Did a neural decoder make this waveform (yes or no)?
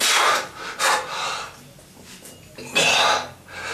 no